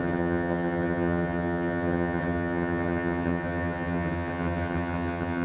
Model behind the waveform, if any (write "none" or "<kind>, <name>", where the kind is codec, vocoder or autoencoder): vocoder, HiFi-GAN